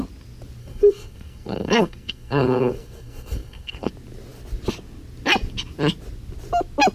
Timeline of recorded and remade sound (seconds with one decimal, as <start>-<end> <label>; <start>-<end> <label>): 0.0-0.6 recorded; 0.6-3.9 remade; 3.9-6.9 recorded